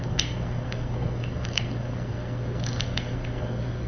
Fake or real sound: fake